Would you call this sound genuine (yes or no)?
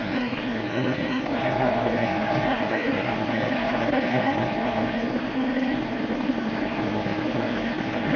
no